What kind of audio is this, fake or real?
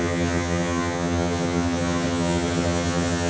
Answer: fake